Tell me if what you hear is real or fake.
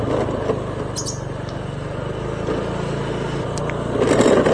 real